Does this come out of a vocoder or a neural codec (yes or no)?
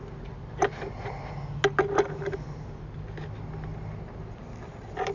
no